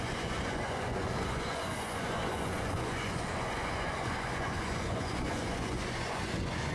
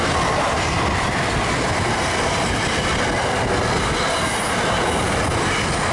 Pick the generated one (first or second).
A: first